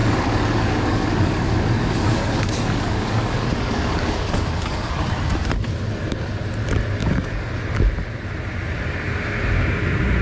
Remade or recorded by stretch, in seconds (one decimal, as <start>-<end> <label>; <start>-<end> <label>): 0.0-4.9 remade; 4.9-7.0 recorded; 7.0-7.5 remade; 7.5-10.2 recorded